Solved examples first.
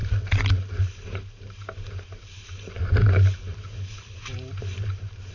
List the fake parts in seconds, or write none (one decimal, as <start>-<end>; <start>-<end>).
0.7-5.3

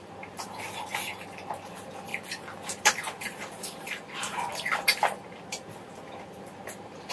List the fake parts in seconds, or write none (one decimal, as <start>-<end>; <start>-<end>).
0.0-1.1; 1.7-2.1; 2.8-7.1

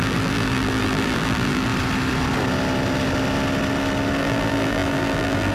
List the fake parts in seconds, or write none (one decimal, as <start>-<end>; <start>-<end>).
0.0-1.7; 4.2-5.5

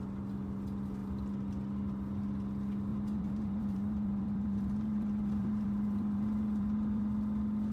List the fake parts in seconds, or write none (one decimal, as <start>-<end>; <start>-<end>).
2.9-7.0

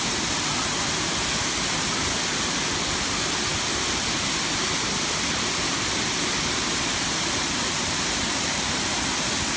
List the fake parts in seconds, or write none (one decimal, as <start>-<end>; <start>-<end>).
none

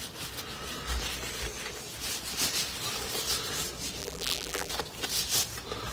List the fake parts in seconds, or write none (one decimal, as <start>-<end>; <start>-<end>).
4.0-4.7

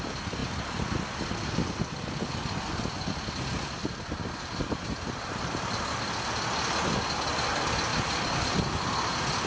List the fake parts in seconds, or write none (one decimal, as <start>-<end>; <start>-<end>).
3.8-5.5; 7.9-8.5

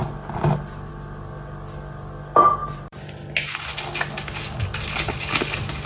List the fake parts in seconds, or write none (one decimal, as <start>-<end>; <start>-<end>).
2.6-3.3